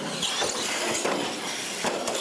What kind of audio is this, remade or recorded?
recorded